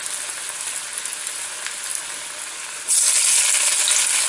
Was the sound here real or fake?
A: real